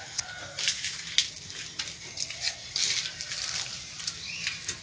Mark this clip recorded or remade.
recorded